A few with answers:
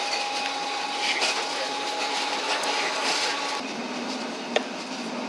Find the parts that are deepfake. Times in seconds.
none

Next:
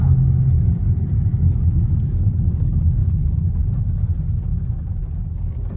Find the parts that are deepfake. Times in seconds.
1.3-2.3 (codec, DAC)

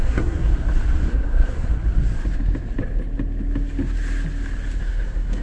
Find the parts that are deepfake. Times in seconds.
0.0-0.5 (codec, SNAC); 1.1-1.7; 4.8-5.4

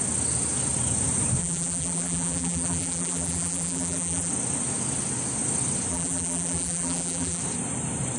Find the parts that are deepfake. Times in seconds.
1.4-4.3 (vocoder, BigVGAN v2); 5.9-7.4

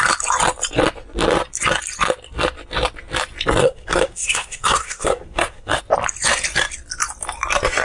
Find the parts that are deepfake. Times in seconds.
3.6-5.8 (codec, SNAC)

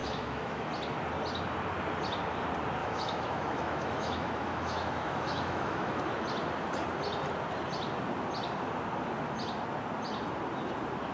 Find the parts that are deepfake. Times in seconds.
0.0-0.7 (autoencoder, DAC-VAE); 2.8-6.0